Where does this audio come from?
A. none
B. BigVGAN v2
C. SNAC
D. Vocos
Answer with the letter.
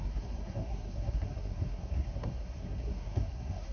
C